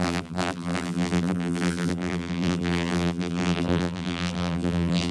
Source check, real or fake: fake